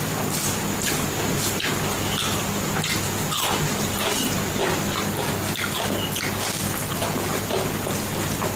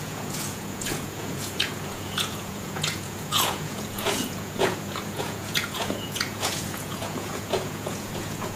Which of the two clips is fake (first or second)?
second